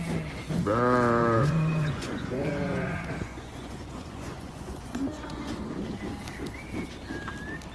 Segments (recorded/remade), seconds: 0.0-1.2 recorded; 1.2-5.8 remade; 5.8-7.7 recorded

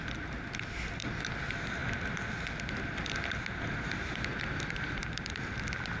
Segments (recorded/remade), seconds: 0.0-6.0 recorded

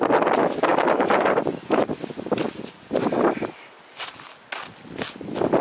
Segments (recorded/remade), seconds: 0.0-5.6 recorded

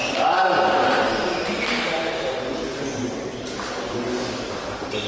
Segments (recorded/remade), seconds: 0.0-5.1 recorded